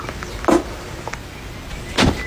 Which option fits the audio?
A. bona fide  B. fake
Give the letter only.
A